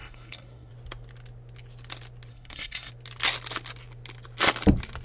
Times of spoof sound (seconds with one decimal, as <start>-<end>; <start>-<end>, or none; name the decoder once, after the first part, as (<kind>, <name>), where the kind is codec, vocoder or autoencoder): 0.0-0.7 (codec, SNAC); 2.3-2.9